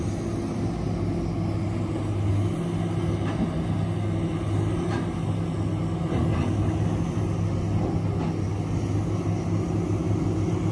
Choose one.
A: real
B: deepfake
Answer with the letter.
A